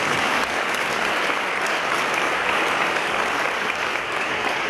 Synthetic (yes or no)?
yes